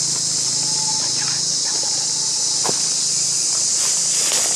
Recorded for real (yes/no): yes